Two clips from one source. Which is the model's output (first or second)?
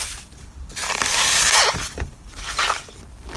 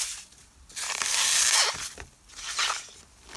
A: first